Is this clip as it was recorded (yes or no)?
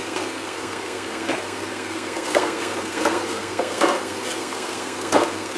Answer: no